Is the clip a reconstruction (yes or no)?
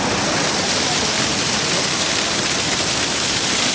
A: no